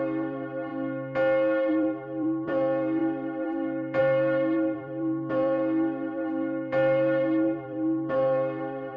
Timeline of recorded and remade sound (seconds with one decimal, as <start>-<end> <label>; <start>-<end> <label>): 0.0-0.7 remade; 0.7-1.7 recorded; 1.7-9.0 remade